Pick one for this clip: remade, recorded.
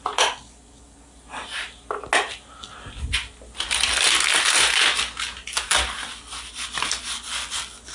recorded